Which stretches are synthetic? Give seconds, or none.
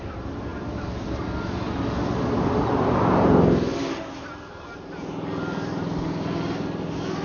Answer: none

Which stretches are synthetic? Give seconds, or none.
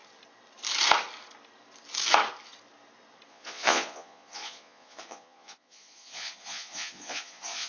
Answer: 3.3-7.7 (vocoder, Vocos)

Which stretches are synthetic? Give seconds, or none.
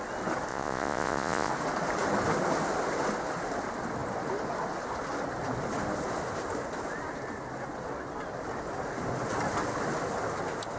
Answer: 0.5-1.5 (vocoder, Vocos)